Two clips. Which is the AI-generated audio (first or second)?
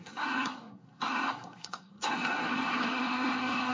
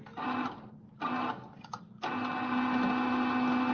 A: first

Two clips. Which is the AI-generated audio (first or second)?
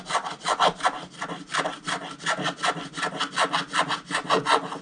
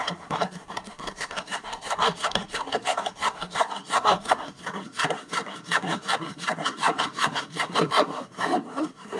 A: second